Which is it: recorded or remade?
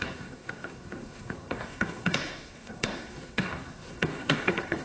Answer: remade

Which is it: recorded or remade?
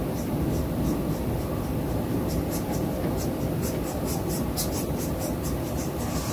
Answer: recorded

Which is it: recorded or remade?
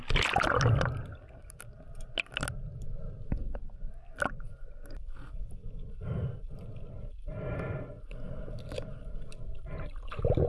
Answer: recorded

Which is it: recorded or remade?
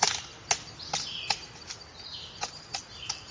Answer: recorded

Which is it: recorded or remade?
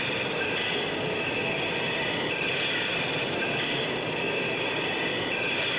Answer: recorded